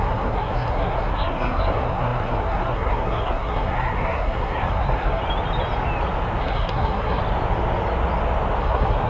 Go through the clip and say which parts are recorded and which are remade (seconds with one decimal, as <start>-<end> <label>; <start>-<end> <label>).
0.0-5.2 remade; 5.2-6.4 recorded; 6.4-7.2 remade; 7.2-8.6 recorded; 8.6-9.1 remade